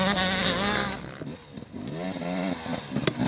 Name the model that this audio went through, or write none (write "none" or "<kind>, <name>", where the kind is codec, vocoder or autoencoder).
none